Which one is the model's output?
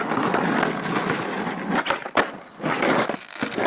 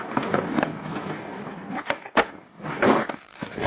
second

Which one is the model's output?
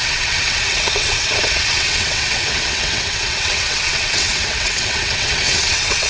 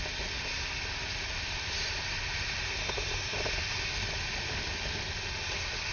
first